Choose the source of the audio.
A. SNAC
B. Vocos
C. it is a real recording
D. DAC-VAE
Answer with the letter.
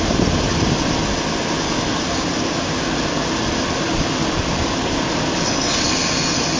C